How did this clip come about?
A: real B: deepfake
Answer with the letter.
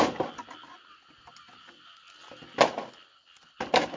A